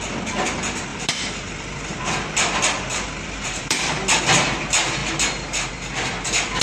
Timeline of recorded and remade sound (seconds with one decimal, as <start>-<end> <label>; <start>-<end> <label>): 0.0-0.9 recorded; 0.9-4.2 remade; 4.2-6.6 recorded